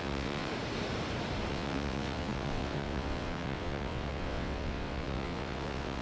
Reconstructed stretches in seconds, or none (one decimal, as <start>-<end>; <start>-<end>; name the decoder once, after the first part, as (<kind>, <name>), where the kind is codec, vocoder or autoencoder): 0.0-0.5 (vocoder, WaveNeXt); 1.5-6.0